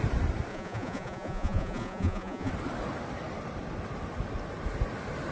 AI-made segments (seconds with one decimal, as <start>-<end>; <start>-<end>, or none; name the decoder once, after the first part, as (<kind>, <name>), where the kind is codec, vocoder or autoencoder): 0.5-2.5 (vocoder, Vocos)